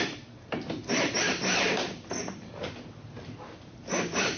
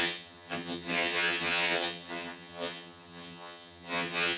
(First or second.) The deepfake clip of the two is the second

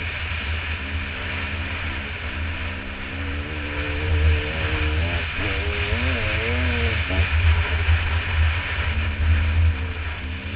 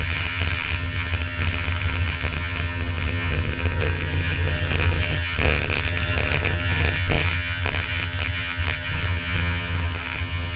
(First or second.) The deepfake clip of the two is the second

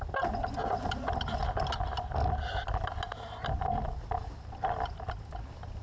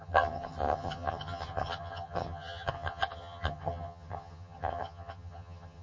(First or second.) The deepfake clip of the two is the second